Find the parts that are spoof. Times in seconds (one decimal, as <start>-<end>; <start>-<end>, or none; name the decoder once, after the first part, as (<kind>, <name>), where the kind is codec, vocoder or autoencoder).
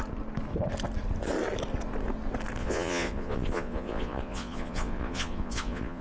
2.6-6.0 (vocoder, Vocos)